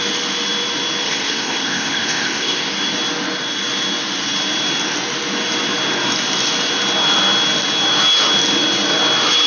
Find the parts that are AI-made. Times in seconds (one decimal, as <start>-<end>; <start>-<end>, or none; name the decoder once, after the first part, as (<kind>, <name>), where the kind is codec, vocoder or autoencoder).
1.0-2.7 (codec, ZipCodec)